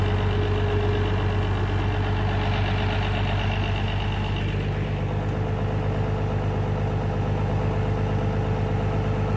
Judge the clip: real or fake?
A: real